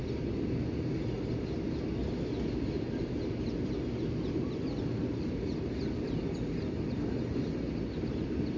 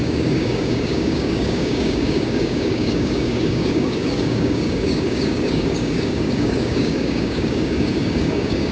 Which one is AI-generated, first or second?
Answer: second